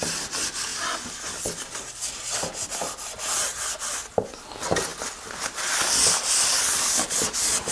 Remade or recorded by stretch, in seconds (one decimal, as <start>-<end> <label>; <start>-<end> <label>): 0.0-7.7 recorded